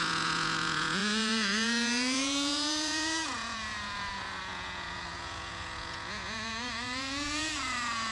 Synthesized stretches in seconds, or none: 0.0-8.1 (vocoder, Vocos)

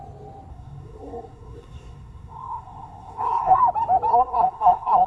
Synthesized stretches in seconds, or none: 0.5-3.6 (codec, SNAC); 4.1-5.1

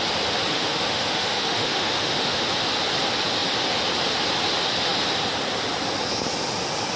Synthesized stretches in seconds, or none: 0.5-2.5 (autoencoder, DAC-VAE)

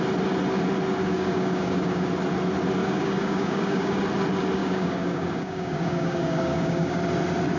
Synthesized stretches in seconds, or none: 1.0-2.1 (codec, DAC); 2.8-4.0; 4.6-7.0

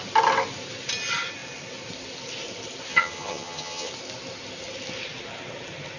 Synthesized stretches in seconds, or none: 2.9-3.9 (vocoder, HiFi-GAN)